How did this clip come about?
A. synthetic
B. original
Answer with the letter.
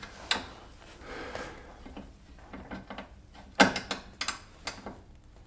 B